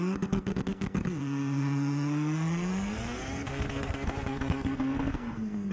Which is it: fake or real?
fake